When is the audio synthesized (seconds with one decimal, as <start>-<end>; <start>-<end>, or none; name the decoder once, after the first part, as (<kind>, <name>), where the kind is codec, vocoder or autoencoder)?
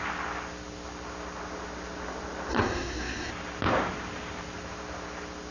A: 2.5-3.3 (codec, SNAC)